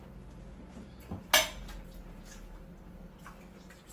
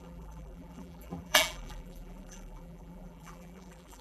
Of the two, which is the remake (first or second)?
second